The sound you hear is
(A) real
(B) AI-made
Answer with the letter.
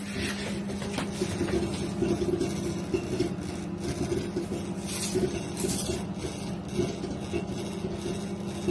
A